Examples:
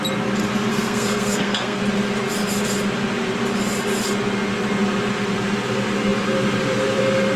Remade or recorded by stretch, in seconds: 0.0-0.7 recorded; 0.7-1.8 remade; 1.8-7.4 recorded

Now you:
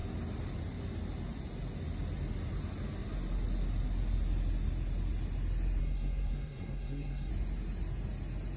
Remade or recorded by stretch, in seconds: 0.0-5.8 recorded; 5.8-7.3 remade; 7.3-8.6 recorded

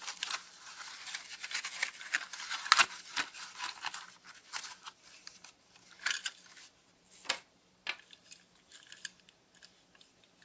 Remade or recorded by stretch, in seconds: 0.0-10.4 recorded

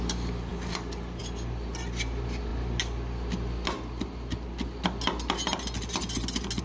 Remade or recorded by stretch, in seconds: 0.0-6.6 recorded

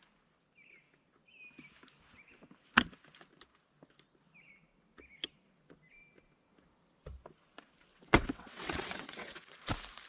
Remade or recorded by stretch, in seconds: 0.0-7.9 recorded; 7.9-9.6 remade; 9.6-10.1 recorded